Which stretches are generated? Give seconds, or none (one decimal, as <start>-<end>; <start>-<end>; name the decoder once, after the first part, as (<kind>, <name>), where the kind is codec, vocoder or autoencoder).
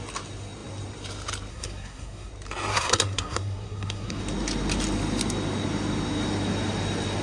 1.5-2.3 (codec, SNAC); 2.7-4.2